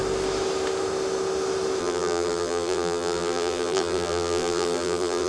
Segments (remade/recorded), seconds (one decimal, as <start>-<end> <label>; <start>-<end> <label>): 0.0-1.8 recorded; 1.8-5.3 remade